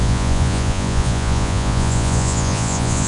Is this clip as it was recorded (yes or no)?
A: no